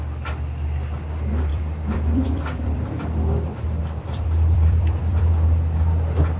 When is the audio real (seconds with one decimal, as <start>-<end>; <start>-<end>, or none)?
0.0-1.5; 3.0-3.8; 5.3-6.4